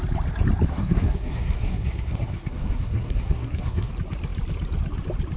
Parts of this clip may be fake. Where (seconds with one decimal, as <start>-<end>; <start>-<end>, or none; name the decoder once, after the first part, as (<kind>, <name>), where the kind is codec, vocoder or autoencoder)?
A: 0.7-3.9 (codec, SNAC)